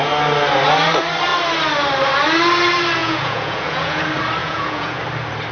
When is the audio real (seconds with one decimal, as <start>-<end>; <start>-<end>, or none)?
0.0-3.0; 4.0-4.4; 5.0-5.5